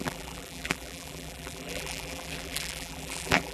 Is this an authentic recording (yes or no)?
no